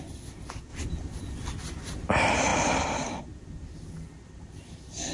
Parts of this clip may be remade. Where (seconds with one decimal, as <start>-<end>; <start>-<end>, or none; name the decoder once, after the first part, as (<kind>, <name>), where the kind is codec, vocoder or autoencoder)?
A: none